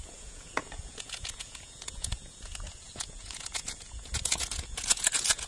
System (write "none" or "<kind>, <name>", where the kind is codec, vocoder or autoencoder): vocoder, Vocos